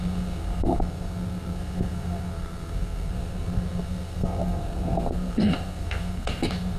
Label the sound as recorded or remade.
remade